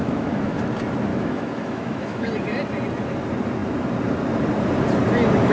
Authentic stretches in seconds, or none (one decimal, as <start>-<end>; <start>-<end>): 0.6-1.1; 2.3-5.5